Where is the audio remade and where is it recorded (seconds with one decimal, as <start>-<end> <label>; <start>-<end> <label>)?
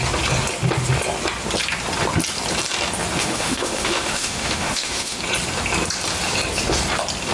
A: 0.0-3.2 recorded; 3.2-5.2 remade; 5.2-7.3 recorded